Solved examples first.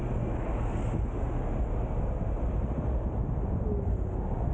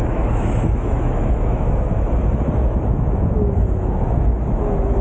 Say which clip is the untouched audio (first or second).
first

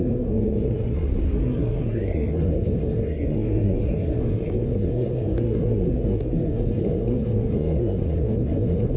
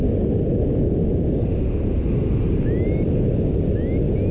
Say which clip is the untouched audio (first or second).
second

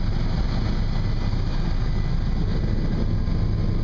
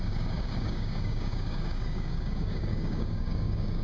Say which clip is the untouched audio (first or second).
first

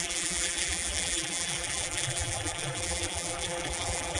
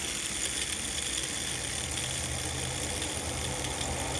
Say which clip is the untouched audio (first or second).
second